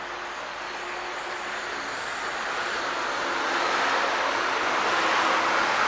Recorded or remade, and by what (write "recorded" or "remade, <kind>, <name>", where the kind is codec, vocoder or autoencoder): recorded